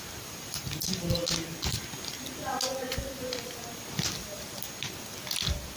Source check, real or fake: real